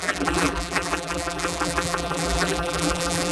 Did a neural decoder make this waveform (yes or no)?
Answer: yes